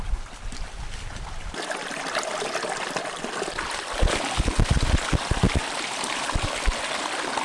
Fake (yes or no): no